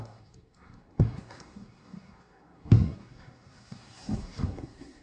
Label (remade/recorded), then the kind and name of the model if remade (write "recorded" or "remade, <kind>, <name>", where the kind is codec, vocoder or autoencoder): remade, codec, SNAC